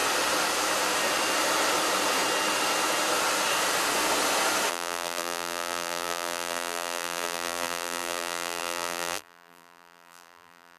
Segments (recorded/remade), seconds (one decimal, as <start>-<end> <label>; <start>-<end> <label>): 0.0-4.7 recorded; 4.7-10.8 remade